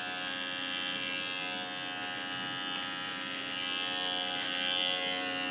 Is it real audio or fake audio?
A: real